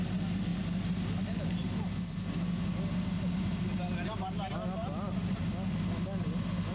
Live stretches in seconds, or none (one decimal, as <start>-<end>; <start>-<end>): 0.0-6.7

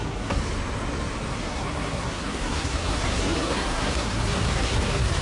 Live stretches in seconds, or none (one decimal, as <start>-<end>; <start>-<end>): 0.4-1.3

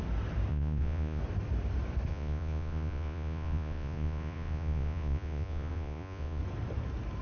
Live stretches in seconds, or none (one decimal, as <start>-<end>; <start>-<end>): 0.0-0.5; 1.2-2.1; 6.4-7.2

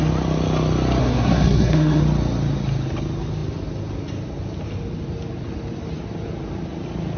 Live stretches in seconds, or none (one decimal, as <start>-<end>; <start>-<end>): 0.0-1.0; 2.0-7.2

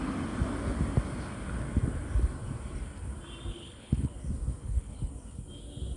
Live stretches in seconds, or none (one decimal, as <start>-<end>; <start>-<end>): 0.0-3.5; 4.1-4.6; 5.1-6.0